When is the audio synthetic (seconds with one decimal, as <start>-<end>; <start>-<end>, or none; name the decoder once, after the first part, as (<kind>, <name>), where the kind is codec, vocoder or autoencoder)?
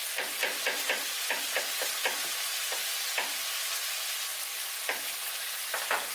0.0-3.3 (vocoder, BigVGAN v2)